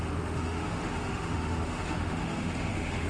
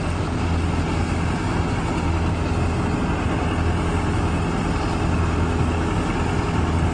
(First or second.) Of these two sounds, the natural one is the second